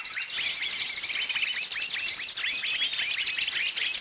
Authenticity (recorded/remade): recorded